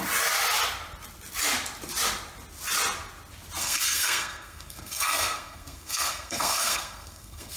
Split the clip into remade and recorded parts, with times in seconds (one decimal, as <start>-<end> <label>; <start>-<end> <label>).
0.0-3.6 recorded; 3.6-7.6 remade